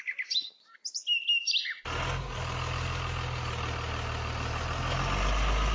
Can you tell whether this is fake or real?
real